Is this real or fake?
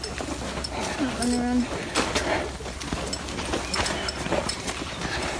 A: real